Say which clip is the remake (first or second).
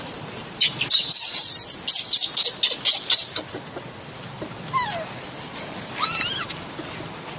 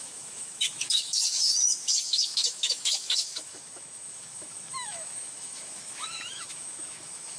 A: second